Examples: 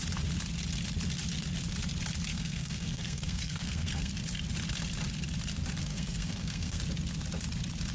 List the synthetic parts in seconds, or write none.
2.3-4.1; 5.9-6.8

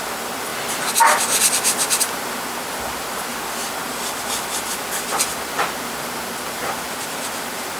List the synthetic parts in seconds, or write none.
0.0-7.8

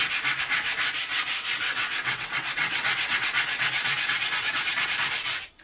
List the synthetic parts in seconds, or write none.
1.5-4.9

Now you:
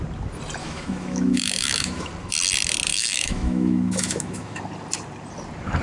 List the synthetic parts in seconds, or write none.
0.6-2.1; 2.9-4.6

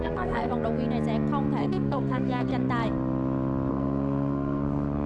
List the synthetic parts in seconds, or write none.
0.0-0.5; 1.6-2.5; 3.7-5.1

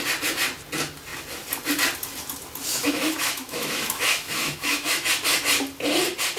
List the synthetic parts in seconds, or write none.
2.7-5.1